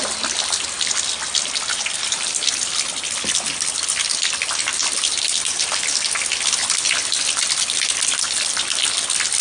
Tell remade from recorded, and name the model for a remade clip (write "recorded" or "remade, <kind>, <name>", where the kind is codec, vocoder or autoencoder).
recorded